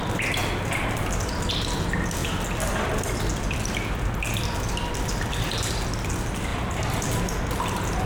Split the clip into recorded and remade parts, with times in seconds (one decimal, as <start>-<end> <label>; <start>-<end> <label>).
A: 0.0-6.5 recorded; 6.5-7.2 remade; 7.2-8.1 recorded